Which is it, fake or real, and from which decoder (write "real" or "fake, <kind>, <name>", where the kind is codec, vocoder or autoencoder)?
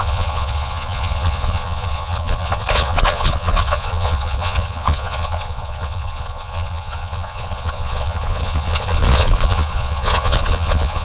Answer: fake, vocoder, Vocos